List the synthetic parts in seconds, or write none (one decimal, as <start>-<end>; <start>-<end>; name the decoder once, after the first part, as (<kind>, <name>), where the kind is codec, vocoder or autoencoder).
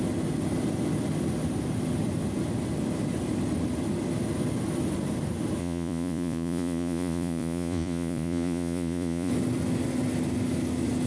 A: 5.6-9.3 (vocoder, Vocos)